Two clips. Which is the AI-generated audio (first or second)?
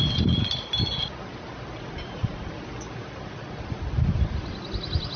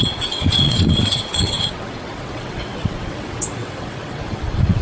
second